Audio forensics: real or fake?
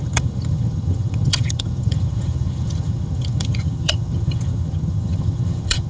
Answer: fake